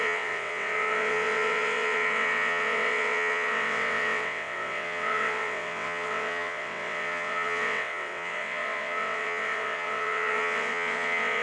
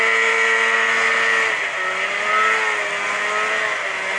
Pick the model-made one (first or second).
first